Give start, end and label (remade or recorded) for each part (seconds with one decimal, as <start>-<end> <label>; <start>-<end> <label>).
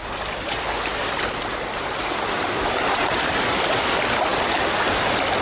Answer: 0.0-0.7 remade; 0.7-5.4 recorded